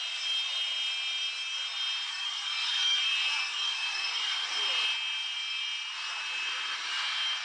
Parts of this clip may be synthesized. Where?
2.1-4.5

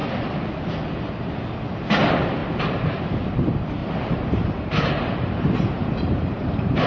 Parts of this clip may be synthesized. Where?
2.4-3.0; 3.8-6.9

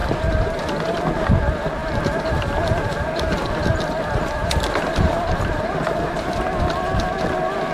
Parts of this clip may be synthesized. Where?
0.0-0.7; 1.8-6.4

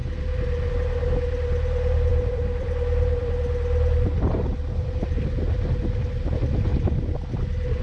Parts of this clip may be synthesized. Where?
2.1-6.0; 6.7-7.8

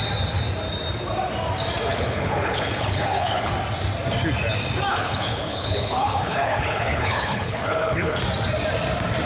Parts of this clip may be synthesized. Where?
1.9-3.5; 4.9-8.2

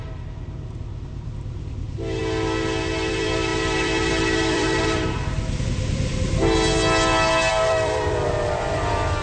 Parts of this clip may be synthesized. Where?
0.0-2.2; 3.1-6.3; 7.5-9.2

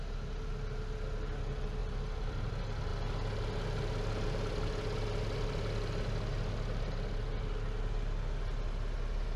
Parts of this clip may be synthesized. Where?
1.8-2.5